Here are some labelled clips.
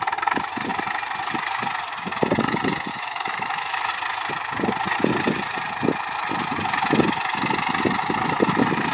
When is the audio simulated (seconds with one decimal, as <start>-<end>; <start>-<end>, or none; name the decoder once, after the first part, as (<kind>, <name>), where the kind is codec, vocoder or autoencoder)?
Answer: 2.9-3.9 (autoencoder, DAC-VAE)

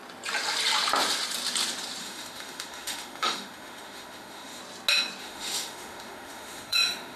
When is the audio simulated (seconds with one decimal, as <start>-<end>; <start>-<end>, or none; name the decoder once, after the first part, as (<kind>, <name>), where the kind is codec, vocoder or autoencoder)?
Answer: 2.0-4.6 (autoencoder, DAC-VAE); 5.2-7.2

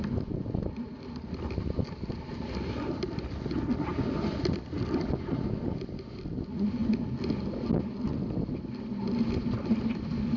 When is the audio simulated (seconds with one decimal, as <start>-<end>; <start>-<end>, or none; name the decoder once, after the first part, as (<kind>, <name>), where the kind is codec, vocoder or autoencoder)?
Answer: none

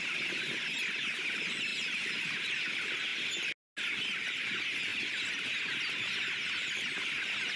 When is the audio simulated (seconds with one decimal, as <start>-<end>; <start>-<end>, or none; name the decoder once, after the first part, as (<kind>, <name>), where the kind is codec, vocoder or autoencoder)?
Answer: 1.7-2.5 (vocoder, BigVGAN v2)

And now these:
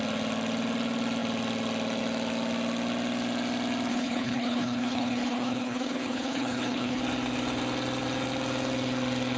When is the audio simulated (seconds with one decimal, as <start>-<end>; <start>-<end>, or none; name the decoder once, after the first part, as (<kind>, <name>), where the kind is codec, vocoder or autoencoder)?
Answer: 3.9-7.0 (codec, HILCodec)

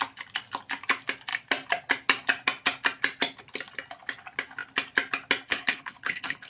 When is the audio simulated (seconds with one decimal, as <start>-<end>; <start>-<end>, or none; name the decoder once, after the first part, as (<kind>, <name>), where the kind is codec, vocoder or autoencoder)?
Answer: 5.5-6.5 (codec, HILCodec)

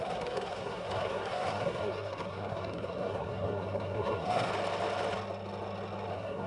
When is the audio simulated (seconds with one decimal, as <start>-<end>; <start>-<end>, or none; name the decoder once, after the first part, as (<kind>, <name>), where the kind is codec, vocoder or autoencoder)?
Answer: 0.0-4.5 (codec, SNAC); 6.1-6.5

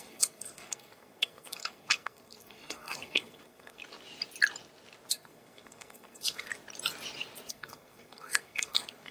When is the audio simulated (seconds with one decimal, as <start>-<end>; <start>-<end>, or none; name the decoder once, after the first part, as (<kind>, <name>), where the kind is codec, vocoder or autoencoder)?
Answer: 0.0-3.8 (codec, SNAC); 5.1-6.5; 7.5-9.1